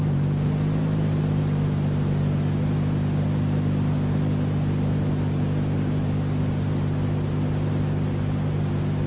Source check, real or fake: real